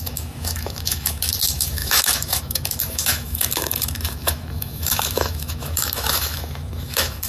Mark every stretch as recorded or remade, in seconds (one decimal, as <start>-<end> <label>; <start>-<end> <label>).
0.0-7.3 remade